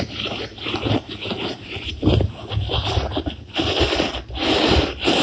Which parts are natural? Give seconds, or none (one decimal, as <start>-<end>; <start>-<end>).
0.0-0.5; 3.6-5.2